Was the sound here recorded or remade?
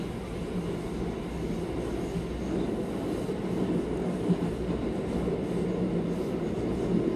recorded